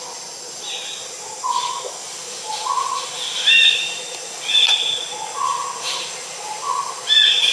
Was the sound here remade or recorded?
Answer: recorded